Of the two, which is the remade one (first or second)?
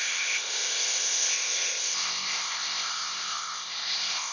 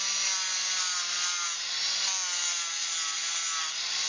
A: first